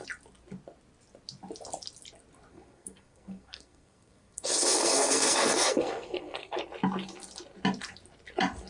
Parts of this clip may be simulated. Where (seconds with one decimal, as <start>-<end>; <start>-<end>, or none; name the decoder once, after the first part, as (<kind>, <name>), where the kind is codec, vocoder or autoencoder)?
2.5-6.6 (codec, SNAC)